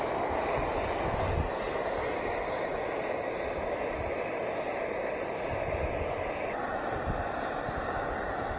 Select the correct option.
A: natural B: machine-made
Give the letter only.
A